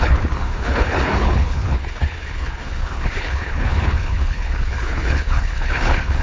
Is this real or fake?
fake